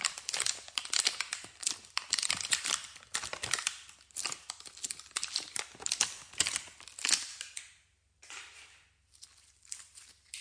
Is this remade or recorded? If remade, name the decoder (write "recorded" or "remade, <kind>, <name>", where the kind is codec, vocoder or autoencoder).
recorded